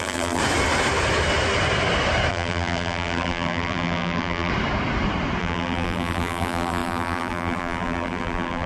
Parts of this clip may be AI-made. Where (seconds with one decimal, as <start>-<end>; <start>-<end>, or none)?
0.0-0.4; 2.3-4.5; 5.4-8.7